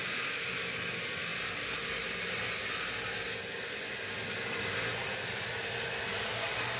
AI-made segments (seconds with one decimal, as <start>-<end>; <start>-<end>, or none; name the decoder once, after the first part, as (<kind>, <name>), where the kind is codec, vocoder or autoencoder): none